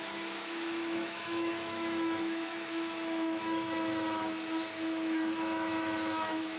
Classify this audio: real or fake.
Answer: fake